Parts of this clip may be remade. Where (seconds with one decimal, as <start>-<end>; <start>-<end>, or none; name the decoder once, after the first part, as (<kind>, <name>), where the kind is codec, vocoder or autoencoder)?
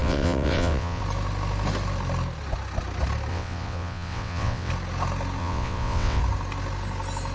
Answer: 0.0-1.0 (vocoder, WaveNeXt); 3.3-4.7; 5.4-6.2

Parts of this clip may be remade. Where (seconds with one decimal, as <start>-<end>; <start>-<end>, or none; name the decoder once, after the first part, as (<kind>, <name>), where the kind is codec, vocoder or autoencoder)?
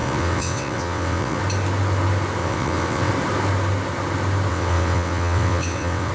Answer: 0.0-1.4 (vocoder, WaveNeXt); 2.4-3.1; 4.5-6.1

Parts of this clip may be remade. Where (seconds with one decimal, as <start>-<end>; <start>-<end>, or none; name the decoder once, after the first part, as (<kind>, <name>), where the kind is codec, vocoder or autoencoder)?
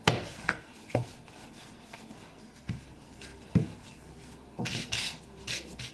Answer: 0.0-5.9 (codec, SNAC)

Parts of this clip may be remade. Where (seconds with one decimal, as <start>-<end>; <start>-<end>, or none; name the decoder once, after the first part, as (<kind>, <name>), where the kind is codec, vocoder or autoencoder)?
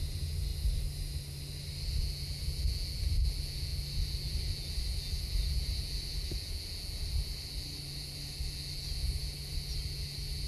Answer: none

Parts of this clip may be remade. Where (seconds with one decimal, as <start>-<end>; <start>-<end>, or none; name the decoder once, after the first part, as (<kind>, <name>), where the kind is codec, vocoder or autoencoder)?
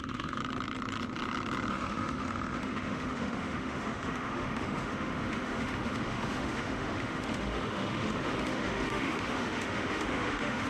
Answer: 0.0-0.4 (autoencoder, DAC-VAE); 1.7-10.7